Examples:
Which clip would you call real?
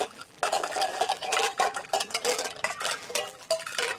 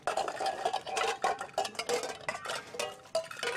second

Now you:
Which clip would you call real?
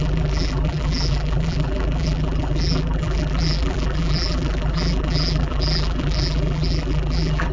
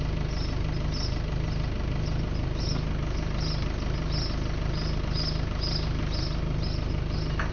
second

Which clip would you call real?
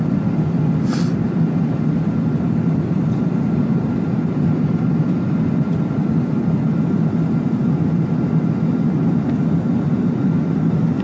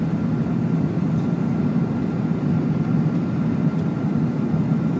second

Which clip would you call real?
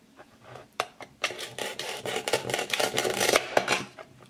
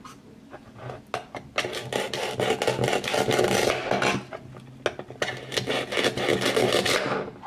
second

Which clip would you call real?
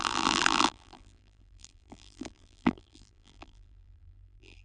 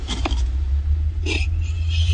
second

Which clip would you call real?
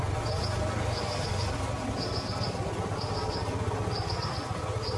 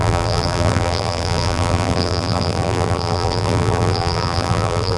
first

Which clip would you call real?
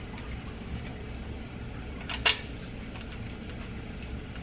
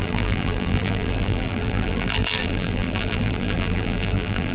first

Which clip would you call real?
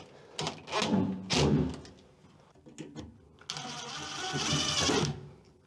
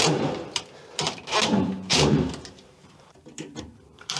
first